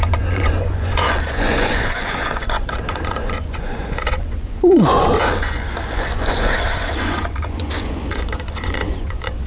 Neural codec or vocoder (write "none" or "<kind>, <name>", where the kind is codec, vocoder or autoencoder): vocoder, Vocos